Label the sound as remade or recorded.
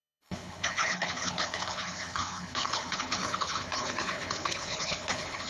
remade